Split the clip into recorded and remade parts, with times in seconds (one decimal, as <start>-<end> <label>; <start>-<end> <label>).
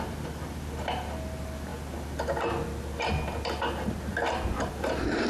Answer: 0.0-1.7 remade; 1.7-4.7 recorded; 4.7-5.3 remade